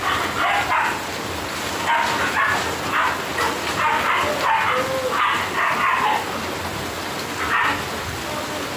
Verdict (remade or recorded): recorded